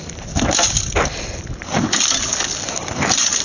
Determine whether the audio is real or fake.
real